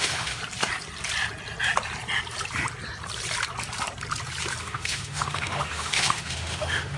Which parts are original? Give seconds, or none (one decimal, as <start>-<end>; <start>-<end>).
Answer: 0.4-4.6